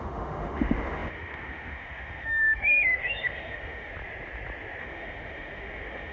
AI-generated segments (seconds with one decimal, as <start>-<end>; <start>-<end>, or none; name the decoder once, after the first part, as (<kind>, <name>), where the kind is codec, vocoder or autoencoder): 0.0-3.9 (autoencoder, DAC-VAE); 4.8-6.1